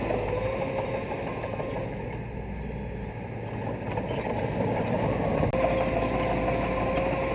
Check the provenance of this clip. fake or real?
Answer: real